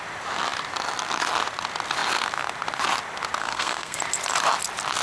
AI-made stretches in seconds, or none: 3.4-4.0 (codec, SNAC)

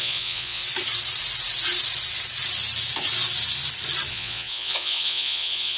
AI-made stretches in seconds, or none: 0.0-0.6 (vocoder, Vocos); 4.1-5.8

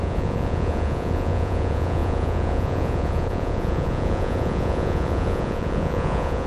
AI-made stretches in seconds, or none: 0.0-6.5 (vocoder, Vocos)

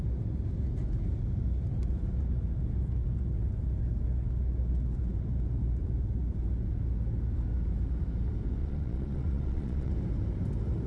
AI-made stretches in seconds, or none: 8.6-9.9 (vocoder, Vocos)